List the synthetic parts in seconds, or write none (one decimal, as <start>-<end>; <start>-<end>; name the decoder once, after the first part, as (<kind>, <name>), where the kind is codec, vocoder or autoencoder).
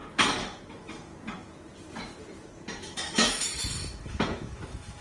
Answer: 0.7-1.1 (autoencoder, DAC-VAE); 2.8-5.0